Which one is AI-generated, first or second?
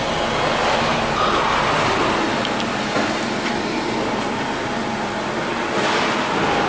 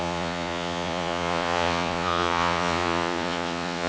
second